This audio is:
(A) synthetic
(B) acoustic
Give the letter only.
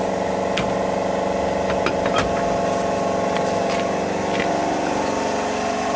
B